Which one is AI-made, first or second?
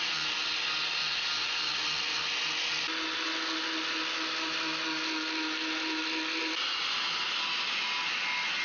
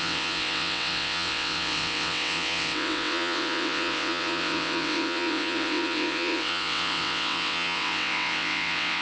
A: second